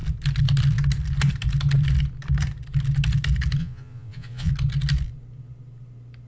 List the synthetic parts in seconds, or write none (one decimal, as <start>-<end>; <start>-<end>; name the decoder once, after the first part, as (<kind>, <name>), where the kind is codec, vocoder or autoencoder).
3.6-4.5 (vocoder, Vocos)